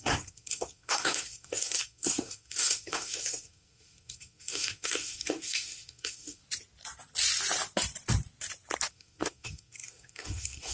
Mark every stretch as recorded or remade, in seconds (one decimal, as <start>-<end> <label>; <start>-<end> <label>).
0.0-6.4 remade; 6.4-8.9 recorded; 8.9-10.7 remade